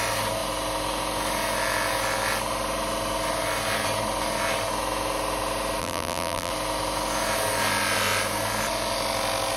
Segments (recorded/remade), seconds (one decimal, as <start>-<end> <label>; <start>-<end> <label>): 0.0-5.8 recorded; 5.8-6.5 remade; 6.5-9.6 recorded